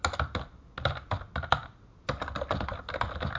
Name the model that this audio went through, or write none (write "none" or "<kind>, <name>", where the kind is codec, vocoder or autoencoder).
none